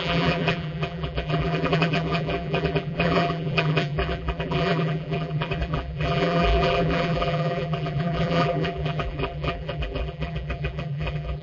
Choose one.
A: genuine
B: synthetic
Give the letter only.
B